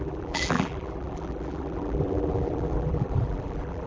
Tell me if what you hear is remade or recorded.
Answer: remade